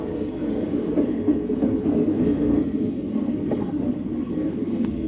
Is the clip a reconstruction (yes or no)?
yes